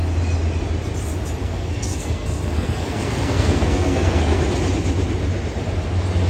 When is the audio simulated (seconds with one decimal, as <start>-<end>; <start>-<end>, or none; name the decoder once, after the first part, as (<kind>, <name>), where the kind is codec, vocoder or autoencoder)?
1.4-4.4 (codec, SNAC)

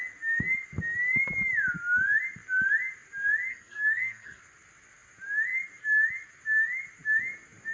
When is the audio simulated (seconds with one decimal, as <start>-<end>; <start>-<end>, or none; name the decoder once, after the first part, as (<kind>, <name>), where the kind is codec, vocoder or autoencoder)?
3.5-4.4 (codec, SNAC)

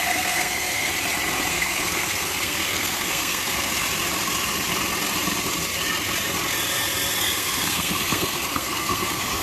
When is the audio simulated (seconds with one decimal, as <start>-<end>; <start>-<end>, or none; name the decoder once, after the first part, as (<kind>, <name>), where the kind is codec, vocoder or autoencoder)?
0.0-0.9 (codec, SNAC); 1.5-3.7; 7.2-9.4

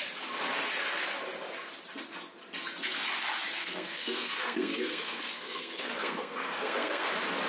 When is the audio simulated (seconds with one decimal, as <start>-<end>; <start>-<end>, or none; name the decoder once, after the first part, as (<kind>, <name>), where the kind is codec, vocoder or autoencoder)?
3.6-7.1 (codec, SNAC)

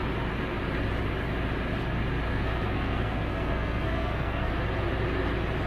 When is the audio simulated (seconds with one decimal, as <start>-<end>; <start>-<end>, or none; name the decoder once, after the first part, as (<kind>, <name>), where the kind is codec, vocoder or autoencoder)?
2.3-4.5 (codec, SNAC)

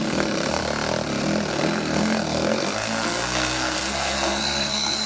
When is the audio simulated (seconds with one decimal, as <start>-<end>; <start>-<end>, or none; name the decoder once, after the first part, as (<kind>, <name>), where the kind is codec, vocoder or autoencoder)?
0.0-0.6 (codec, SNAC); 1.5-5.1

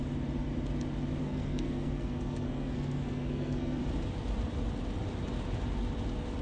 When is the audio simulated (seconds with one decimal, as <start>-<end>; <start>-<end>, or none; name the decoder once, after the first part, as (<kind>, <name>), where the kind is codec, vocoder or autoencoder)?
1.2-3.8 (codec, SNAC)

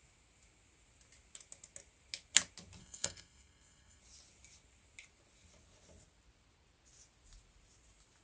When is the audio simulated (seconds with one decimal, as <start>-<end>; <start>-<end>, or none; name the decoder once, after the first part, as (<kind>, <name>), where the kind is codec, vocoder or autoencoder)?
2.8-4.0 (codec, SNAC)